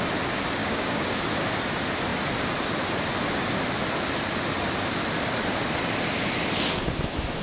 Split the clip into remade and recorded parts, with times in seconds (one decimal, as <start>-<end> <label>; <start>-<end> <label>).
0.0-0.6 recorded; 0.6-1.2 remade; 1.2-7.4 recorded